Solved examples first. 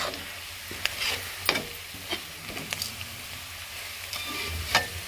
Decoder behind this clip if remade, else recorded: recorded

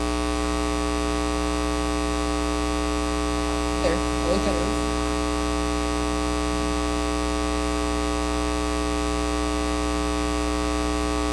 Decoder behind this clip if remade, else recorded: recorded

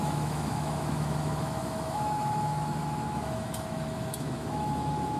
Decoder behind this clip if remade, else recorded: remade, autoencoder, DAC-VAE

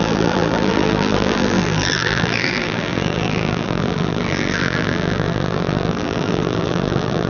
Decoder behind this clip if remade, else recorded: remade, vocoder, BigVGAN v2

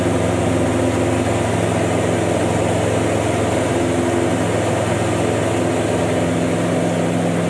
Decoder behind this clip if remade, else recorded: recorded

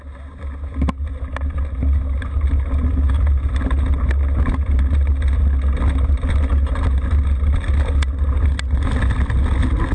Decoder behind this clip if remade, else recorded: recorded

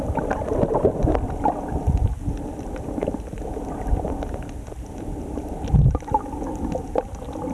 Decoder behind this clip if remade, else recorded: recorded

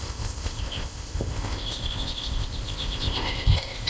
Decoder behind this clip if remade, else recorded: remade, codec, ZipCodec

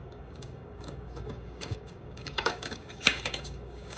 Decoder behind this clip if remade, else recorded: remade, codec, DAC